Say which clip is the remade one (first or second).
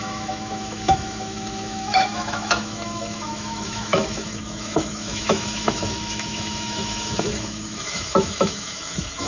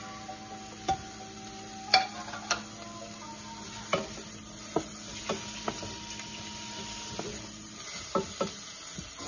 first